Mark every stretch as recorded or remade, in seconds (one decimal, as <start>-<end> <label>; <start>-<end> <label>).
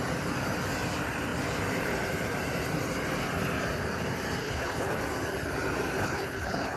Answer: 0.0-4.4 recorded; 4.4-5.0 remade; 5.0-6.0 recorded; 6.0-6.8 remade